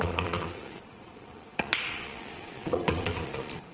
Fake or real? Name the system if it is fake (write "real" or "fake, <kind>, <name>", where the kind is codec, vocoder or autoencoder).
fake, vocoder, Vocos